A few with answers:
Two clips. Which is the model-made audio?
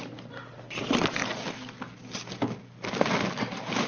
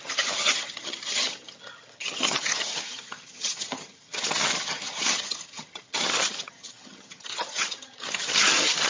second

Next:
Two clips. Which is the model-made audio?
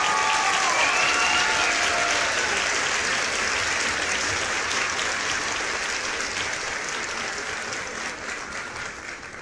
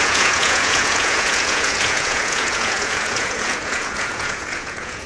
second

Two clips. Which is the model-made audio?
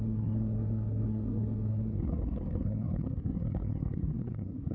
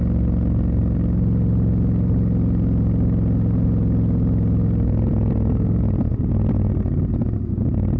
first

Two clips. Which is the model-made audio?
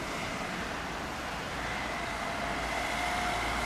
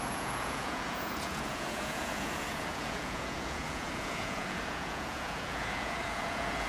second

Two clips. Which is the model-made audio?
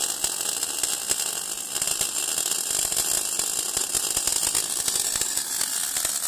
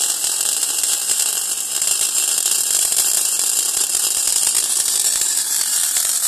second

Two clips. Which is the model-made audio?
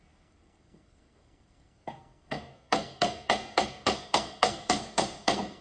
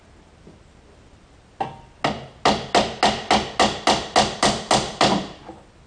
first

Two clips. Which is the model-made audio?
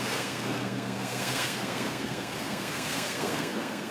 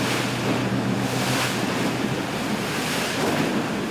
first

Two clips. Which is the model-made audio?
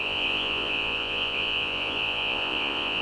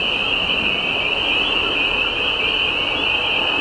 first